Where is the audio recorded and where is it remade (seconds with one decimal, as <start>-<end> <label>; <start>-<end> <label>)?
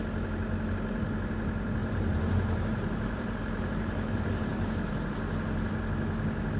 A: 0.0-1.8 recorded; 1.8-5.1 remade; 5.1-6.6 recorded